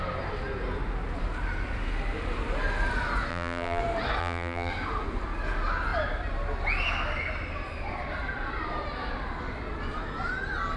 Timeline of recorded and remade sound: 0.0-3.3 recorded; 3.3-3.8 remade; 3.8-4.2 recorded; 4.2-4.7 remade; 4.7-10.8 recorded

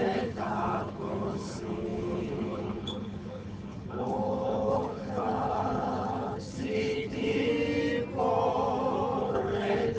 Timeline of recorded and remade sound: 0.0-7.5 remade; 7.5-9.2 recorded; 9.2-10.0 remade

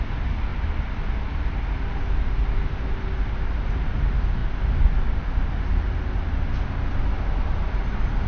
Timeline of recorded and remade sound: 0.0-8.3 recorded

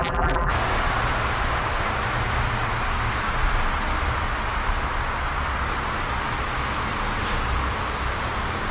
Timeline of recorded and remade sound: 0.0-0.5 remade; 0.5-8.7 recorded

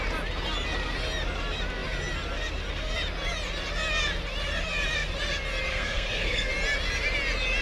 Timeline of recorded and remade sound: 0.0-5.7 recorded; 5.7-6.5 remade; 6.5-7.6 recorded

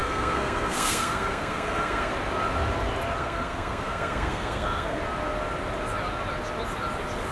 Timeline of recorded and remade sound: 0.0-2.1 remade; 2.1-3.2 recorded; 3.2-5.0 remade; 5.0-7.3 recorded

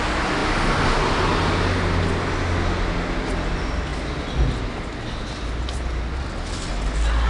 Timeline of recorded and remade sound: 0.0-7.3 recorded